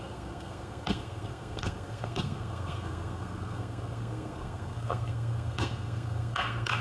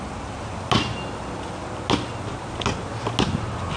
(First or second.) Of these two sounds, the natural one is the second